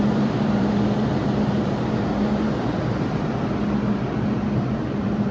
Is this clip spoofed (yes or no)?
yes